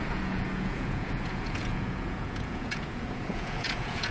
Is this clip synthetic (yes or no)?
yes